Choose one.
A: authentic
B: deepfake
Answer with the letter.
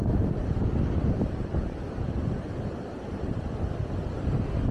B